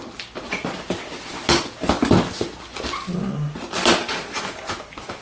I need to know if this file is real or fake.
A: real